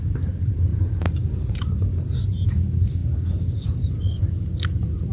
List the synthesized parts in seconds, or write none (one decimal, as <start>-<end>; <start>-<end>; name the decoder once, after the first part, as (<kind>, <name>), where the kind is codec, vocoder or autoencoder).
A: 0.7-2.5 (vocoder, BigVGAN v2)